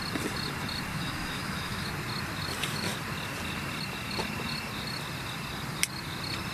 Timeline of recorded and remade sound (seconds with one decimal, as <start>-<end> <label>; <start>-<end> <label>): 0.0-0.9 recorded; 0.9-1.9 remade; 1.9-6.5 recorded